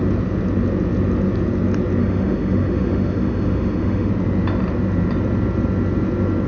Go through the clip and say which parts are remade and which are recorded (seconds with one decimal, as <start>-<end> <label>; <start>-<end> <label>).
0.0-2.0 recorded; 2.0-4.1 remade; 4.1-6.5 recorded